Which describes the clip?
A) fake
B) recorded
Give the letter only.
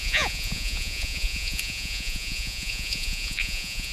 A